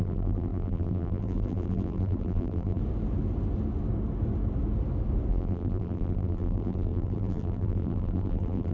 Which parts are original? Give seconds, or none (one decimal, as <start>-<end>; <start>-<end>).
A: 2.8-5.3

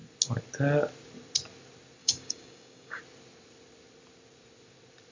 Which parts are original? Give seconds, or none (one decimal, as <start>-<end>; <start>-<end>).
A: 0.0-2.0; 3.0-5.1